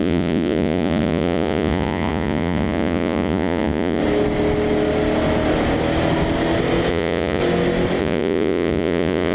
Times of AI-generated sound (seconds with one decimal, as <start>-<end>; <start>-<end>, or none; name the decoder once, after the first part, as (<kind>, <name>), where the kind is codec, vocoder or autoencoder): 0.0-4.0 (vocoder, Vocos); 6.9-7.4; 8.0-9.3